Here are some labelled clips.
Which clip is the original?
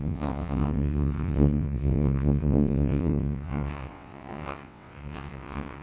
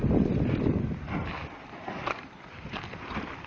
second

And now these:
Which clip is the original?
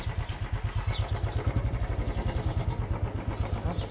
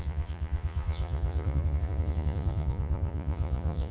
first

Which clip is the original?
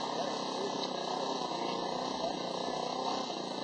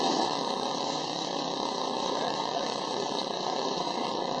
first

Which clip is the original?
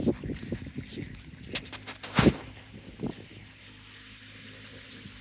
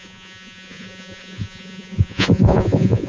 first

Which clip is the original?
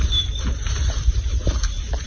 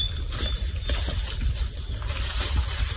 second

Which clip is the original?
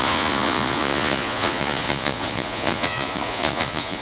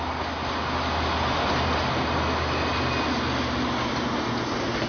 second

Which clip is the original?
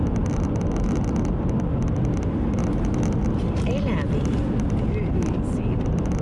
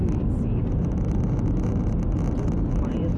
second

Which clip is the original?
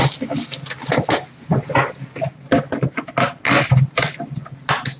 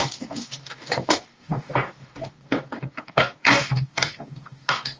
first